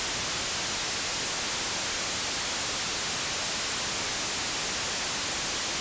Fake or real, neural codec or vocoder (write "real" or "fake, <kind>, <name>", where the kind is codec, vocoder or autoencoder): real